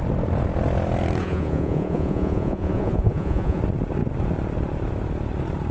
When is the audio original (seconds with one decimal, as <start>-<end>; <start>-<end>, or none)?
0.0-1.2; 3.6-5.7